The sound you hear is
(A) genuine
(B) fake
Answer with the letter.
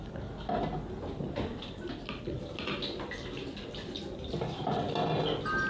A